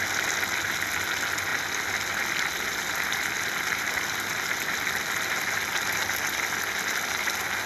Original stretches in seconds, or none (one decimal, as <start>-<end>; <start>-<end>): 0.0-7.7